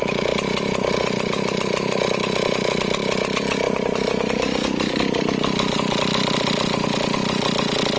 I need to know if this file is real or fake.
real